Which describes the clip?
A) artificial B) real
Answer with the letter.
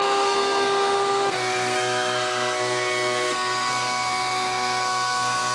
A